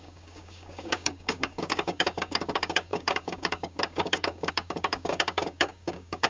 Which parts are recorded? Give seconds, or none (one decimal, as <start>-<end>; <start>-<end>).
none